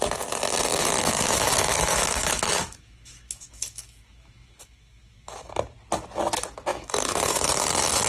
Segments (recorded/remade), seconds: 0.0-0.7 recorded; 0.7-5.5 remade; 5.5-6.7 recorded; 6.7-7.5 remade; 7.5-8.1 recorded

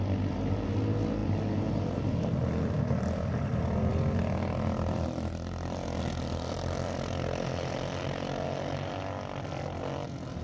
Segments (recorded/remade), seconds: 0.0-10.4 recorded

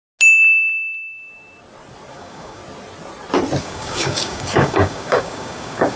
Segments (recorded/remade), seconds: 0.0-2.1 recorded; 2.1-2.6 remade; 2.6-3.6 recorded; 3.6-6.0 remade

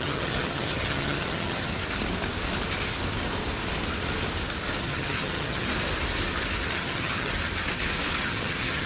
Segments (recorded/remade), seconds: 0.0-1.7 remade; 1.7-4.8 recorded; 4.8-5.7 remade; 5.7-6.7 recorded; 6.7-7.3 remade; 7.3-8.2 recorded; 8.2-8.9 remade

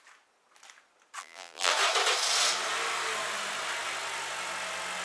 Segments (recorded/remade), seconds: 0.0-1.2 recorded; 1.2-1.7 remade; 1.7-5.0 recorded

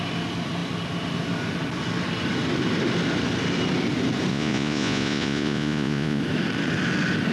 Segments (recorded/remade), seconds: 0.0-4.3 recorded; 4.3-6.2 remade; 6.2-7.3 recorded

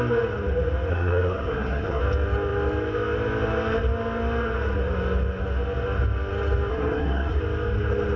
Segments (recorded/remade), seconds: 0.0-0.9 recorded; 0.9-2.0 remade; 2.0-6.7 recorded; 6.7-7.4 remade; 7.4-8.2 recorded

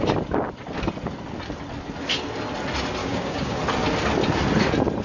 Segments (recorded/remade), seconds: 0.0-3.0 recorded; 3.0-3.6 remade; 3.6-5.0 recorded